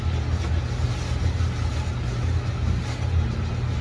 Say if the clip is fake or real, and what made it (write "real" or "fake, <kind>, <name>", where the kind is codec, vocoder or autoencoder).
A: real